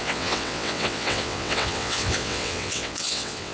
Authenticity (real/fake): fake